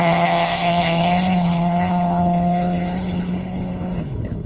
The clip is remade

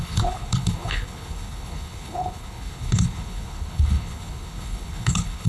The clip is remade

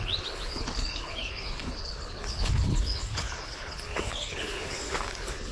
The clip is remade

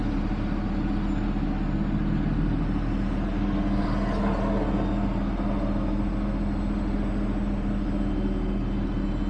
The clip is recorded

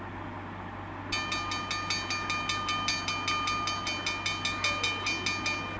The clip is recorded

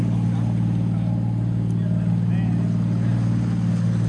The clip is recorded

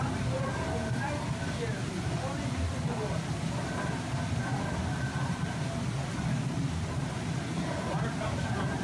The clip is recorded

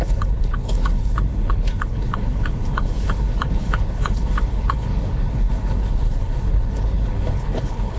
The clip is remade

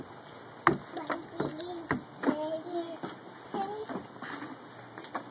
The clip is recorded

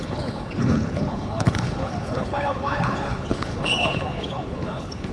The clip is remade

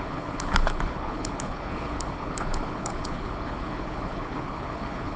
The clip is remade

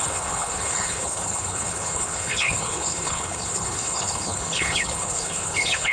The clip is remade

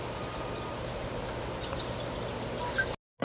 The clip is recorded